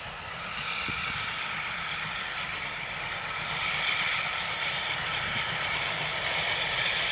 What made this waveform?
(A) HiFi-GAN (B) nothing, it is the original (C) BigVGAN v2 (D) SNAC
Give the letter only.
B